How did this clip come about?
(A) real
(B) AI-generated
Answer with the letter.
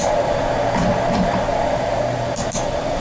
B